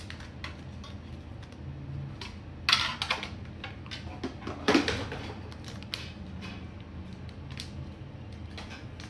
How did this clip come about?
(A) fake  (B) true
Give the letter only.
B